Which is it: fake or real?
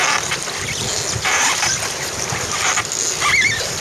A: real